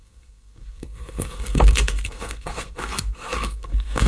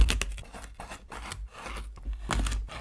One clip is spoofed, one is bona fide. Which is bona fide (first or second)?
second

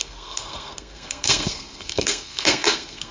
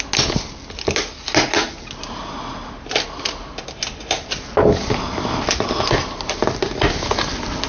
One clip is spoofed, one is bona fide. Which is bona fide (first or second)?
second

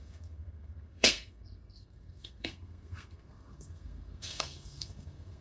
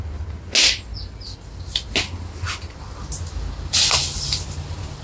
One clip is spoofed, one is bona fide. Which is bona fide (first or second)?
second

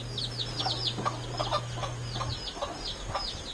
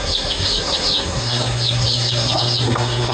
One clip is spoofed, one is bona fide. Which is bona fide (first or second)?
first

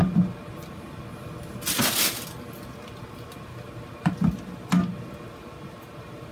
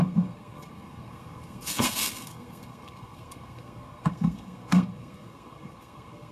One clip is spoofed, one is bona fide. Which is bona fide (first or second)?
first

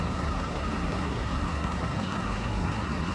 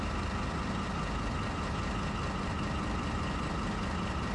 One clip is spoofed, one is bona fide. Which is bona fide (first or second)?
second